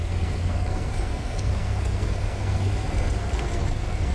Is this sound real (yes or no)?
no